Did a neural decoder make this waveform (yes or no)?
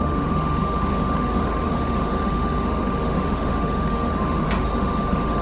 yes